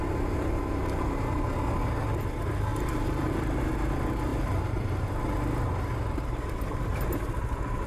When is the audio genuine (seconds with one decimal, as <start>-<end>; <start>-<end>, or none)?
0.0-2.7; 3.3-7.9